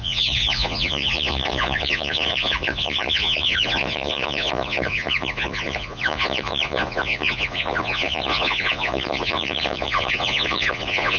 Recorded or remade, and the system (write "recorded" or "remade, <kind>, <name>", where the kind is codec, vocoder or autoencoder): remade, vocoder, Vocos